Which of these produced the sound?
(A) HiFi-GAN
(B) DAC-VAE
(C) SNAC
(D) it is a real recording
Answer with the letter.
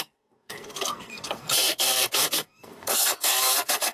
C